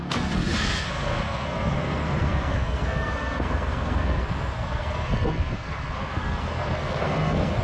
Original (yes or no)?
no